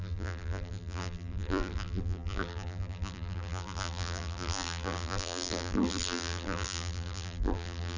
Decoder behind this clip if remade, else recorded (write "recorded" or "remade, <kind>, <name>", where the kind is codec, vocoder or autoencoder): remade, vocoder, BigVGAN v2